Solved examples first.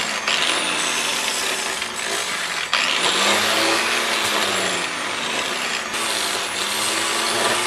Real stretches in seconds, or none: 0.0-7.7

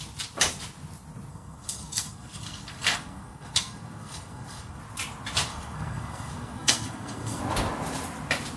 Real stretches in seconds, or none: 0.0-1.3; 4.8-5.5; 7.4-8.6